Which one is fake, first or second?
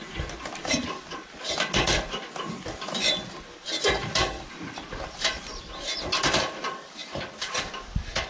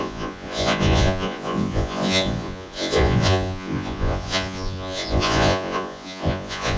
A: second